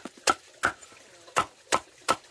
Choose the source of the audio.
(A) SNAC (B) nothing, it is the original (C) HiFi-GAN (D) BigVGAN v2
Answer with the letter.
B